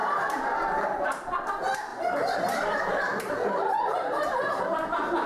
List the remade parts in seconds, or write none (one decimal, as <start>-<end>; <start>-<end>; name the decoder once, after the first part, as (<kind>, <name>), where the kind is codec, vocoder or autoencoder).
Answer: 0.0-1.4 (vocoder, BigVGAN v2); 1.9-5.3